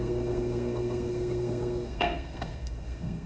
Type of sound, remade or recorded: remade